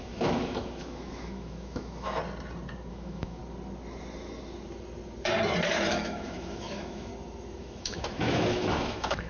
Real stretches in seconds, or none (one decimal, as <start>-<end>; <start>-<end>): 2.2-2.9; 3.4-5.9; 7.1-7.6